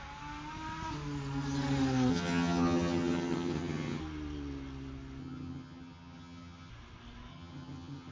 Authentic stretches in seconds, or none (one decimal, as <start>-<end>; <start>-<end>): 0.0-2.1; 4.0-5.2; 6.7-7.3